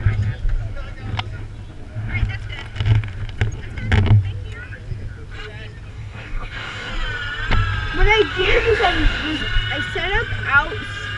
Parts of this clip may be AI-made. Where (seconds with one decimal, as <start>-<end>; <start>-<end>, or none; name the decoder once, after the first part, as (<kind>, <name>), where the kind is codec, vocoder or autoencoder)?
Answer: 5.9-6.9 (codec, DAC); 8.3-9.4

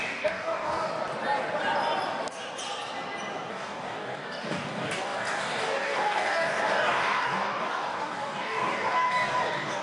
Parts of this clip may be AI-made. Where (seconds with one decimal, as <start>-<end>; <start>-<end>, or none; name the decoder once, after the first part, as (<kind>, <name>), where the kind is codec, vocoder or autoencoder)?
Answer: 0.0-0.9 (codec, DAC); 3.5-9.8

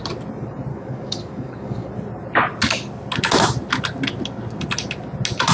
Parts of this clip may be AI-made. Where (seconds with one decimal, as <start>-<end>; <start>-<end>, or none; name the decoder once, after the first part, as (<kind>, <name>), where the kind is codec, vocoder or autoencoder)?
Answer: 0.7-1.9 (codec, DAC)

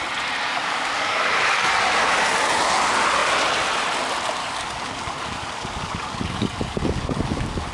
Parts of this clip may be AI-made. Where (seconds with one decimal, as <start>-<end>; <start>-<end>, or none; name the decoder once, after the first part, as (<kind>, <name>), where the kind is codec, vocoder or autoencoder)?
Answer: 0.5-1.7 (codec, DAC); 4.4-7.7

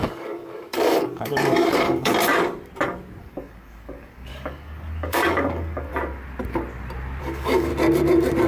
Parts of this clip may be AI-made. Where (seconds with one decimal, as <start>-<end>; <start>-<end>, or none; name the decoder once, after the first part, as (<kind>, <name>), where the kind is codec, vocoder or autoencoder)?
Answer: 0.0-2.1 (codec, DAC); 3.2-5.9; 7.2-7.7

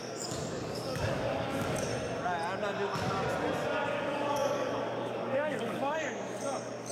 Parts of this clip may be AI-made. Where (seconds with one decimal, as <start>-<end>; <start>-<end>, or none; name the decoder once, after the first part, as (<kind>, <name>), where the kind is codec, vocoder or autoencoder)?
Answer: 0.0-1.9 (codec, DAC); 3.9-6.9

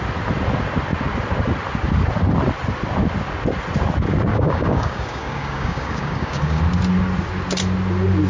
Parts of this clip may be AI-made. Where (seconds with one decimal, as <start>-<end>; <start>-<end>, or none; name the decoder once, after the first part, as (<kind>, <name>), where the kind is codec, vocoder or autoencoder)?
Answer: 4.3-6.6 (codec, DAC)